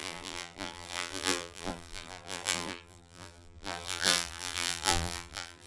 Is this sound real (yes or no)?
no